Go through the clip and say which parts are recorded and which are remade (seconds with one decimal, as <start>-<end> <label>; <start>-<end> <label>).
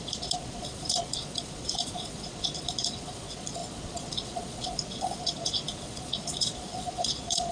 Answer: 0.0-7.5 remade